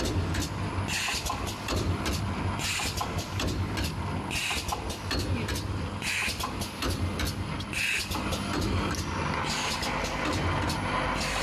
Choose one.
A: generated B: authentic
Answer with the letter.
B